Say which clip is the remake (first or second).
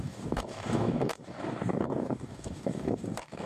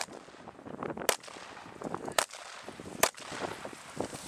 first